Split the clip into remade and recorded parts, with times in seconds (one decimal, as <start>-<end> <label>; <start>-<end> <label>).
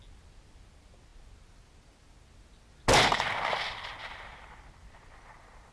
0.0-5.7 recorded